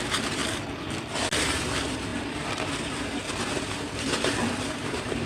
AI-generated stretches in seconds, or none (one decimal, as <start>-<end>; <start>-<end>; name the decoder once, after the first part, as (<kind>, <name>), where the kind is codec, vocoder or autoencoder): 0.0-0.4 (vocoder, BigVGAN v2); 1.4-2.1; 2.8-5.3